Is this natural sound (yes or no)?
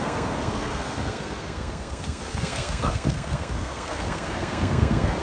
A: no